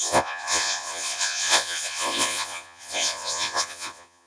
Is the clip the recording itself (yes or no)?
no